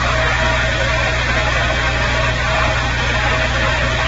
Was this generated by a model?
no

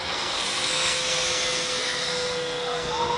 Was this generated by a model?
yes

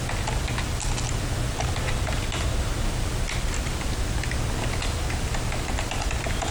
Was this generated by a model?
no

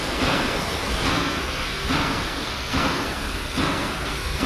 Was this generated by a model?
yes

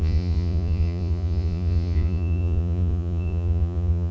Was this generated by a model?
yes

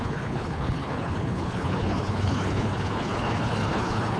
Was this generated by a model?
yes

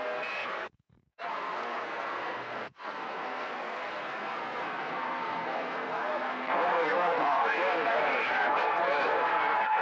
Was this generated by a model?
yes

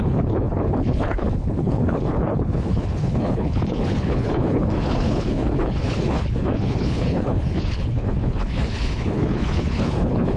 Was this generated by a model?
yes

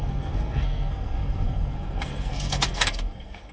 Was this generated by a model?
yes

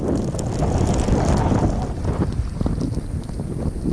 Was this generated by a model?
no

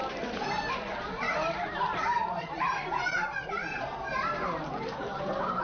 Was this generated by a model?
yes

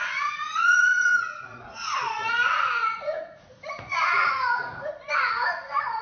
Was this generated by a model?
yes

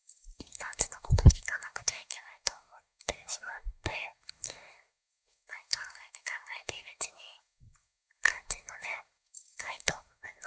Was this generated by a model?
yes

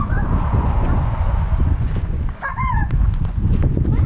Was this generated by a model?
yes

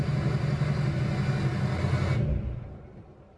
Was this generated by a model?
no